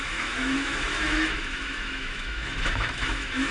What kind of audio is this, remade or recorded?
remade